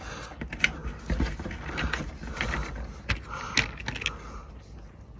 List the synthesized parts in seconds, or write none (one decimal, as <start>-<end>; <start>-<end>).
none